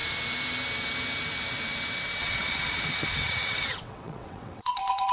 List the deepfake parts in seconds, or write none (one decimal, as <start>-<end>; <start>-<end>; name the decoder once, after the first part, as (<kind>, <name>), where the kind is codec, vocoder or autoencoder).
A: 2.2-5.1 (vocoder, WaveNeXt)